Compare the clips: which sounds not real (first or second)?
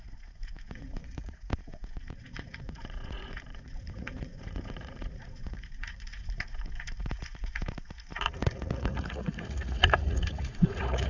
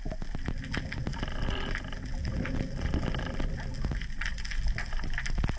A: first